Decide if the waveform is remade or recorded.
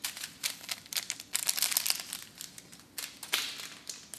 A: recorded